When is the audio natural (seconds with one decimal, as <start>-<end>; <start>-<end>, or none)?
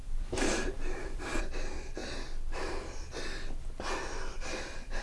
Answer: 1.4-5.0